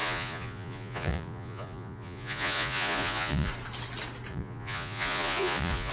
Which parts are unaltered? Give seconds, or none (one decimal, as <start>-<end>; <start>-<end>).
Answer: 3.5-4.3